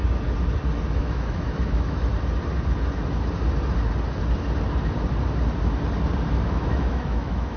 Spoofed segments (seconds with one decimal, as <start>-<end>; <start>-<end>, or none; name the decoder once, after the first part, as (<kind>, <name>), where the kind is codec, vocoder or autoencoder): 1.0-2.1 (autoencoder, DAC-VAE); 6.5-7.6